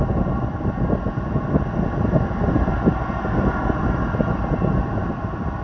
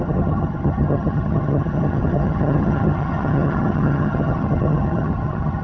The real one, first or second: first